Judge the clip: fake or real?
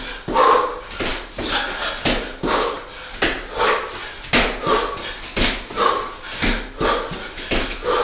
real